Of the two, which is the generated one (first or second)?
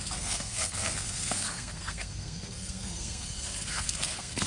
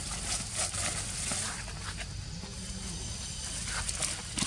first